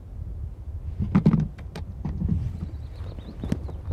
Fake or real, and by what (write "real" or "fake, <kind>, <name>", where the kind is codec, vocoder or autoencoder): real